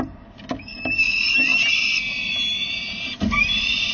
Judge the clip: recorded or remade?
recorded